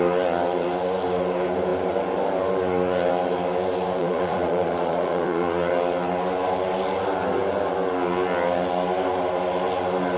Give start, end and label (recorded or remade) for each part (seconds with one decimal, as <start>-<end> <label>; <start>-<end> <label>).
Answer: 0.0-4.0 recorded; 4.0-5.7 remade; 5.7-10.2 recorded